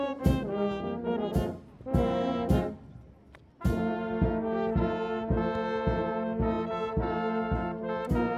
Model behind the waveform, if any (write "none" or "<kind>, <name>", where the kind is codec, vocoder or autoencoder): none